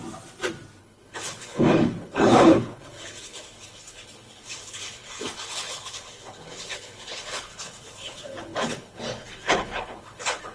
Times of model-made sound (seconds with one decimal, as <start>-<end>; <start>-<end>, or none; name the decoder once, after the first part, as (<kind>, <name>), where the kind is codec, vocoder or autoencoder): 0.8-10.5 (codec, HILCodec)